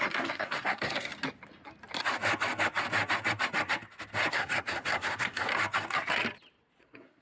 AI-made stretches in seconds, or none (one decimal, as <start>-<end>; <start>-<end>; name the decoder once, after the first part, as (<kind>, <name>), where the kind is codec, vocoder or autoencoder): 0.0-1.1 (codec, SNAC); 4.3-5.5; 6.8-7.2